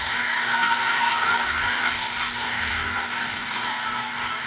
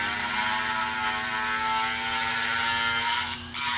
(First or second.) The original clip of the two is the second